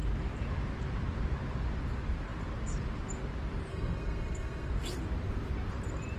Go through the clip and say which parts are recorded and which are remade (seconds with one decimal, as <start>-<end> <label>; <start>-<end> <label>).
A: 0.0-3.7 recorded; 3.7-4.7 remade; 4.7-6.2 recorded